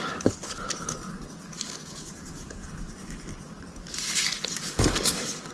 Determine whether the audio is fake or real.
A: fake